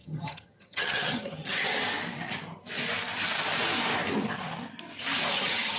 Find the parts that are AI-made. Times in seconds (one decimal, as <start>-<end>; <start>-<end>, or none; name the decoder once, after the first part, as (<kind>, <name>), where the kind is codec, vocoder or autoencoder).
0.0-1.8 (vocoder, HiFi-GAN); 5.3-5.8